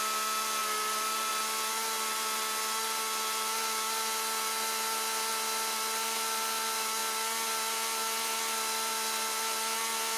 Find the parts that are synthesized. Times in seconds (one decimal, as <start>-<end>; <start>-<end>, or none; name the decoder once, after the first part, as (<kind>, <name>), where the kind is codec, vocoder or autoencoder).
0.6-1.3 (vocoder, BigVGAN v2)